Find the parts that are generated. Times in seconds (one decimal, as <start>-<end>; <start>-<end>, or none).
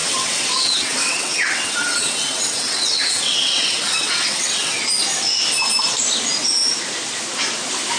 0.0-4.8